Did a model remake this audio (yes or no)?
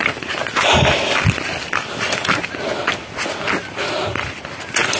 no